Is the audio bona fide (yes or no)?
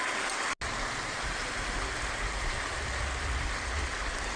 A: yes